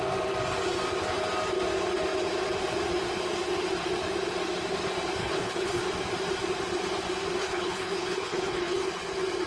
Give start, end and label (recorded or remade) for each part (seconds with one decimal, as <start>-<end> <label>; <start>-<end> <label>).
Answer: 0.0-5.2 recorded; 5.2-5.8 remade; 5.8-7.4 recorded; 7.4-8.9 remade; 8.9-9.5 recorded